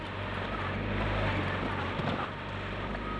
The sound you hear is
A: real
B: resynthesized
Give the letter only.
A